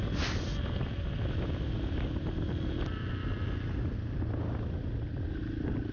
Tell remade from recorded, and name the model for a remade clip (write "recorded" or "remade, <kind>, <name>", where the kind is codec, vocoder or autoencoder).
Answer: recorded